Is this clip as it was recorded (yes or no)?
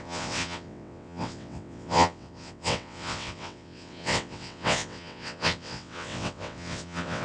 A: no